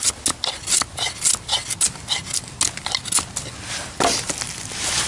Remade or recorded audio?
recorded